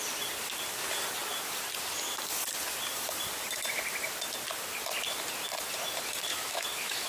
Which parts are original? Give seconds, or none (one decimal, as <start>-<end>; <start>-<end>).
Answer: 0.0-6.3